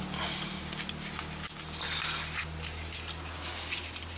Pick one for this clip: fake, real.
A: real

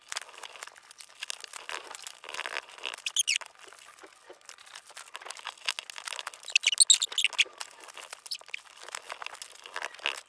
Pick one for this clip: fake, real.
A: real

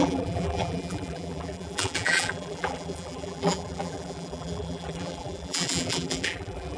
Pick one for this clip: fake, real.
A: fake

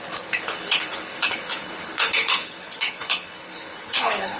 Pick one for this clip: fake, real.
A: fake